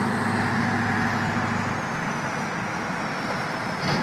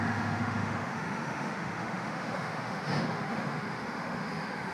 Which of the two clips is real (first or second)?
first